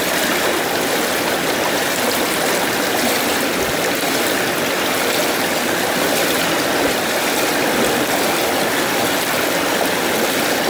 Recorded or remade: recorded